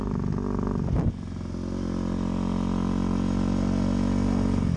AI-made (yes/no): no